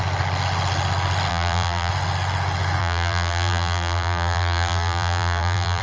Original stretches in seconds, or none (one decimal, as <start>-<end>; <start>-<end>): 0.0-1.3; 1.9-2.8

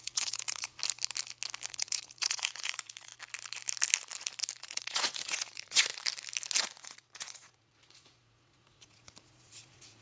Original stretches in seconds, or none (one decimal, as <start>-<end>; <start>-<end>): 0.8-1.7; 3.1-4.6; 5.9-6.6

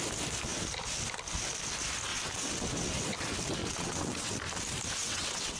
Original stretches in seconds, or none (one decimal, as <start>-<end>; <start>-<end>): 0.0-2.1; 2.9-3.6; 4.4-5.0

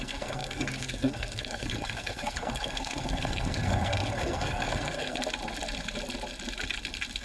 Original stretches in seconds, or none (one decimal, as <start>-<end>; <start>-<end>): 5.2-7.2

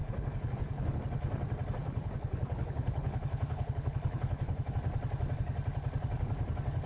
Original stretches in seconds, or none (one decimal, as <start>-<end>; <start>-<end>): 1.0-1.8; 4.7-6.9